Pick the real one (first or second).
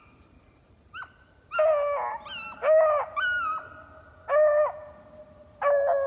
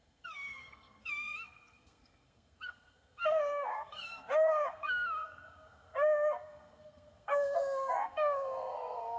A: first